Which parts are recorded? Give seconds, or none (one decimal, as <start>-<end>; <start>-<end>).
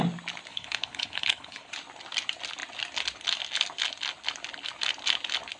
0.0-0.5; 1.7-5.6